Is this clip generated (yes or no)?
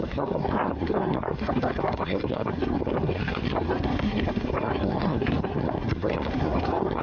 yes